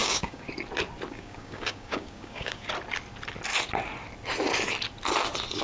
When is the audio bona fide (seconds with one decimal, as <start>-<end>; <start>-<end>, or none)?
0.5-1.1; 2.7-5.6